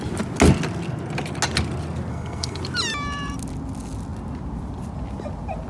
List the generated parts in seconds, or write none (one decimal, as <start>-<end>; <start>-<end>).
2.1-2.6